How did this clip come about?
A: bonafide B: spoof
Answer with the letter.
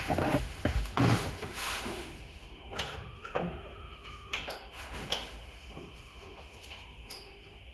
B